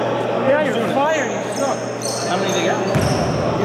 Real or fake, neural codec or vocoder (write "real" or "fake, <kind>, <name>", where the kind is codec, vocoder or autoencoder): real